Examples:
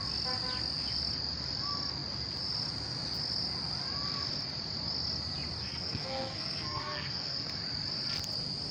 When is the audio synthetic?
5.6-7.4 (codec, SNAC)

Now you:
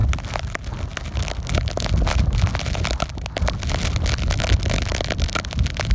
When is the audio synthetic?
none

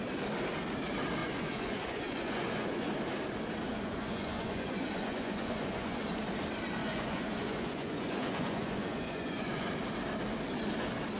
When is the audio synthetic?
1.2-2.9 (vocoder, Vocos); 3.7-6.0; 6.8-9.7

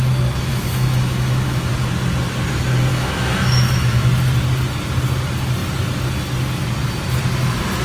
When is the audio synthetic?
0.5-1.7 (autoencoder, DAC-VAE); 2.9-4.1